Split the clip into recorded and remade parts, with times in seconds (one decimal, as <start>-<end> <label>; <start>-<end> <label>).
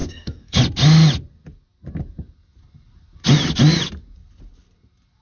0.0-0.6 remade; 0.6-5.2 recorded